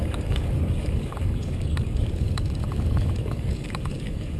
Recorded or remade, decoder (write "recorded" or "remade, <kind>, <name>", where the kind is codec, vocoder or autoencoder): remade, codec, DAC